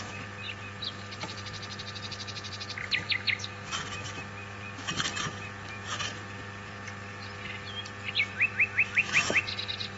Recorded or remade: remade